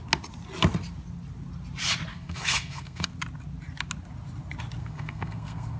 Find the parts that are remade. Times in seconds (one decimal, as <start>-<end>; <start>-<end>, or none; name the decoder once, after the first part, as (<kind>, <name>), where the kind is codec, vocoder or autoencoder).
2.1-3.1 (codec, SNAC); 4.8-5.8